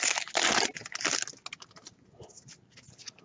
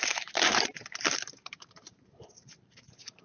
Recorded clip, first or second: first